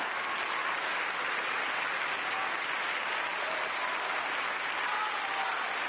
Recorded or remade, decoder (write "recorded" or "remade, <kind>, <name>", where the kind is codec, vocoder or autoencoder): recorded